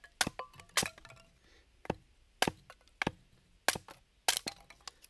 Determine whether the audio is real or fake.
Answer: real